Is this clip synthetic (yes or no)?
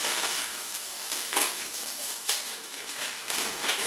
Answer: yes